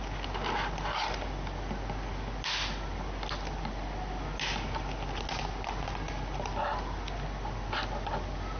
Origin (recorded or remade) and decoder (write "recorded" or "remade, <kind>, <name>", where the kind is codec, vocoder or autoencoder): recorded